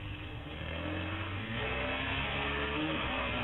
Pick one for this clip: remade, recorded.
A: remade